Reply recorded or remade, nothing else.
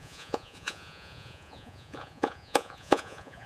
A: remade